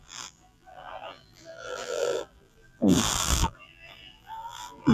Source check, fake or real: fake